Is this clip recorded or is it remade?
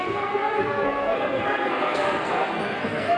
remade